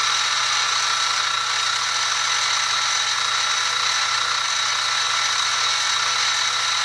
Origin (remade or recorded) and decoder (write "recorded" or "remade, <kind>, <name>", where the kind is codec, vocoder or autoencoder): recorded